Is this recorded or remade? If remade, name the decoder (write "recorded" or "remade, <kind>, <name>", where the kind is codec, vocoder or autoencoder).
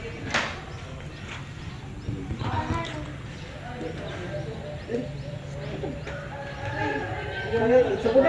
recorded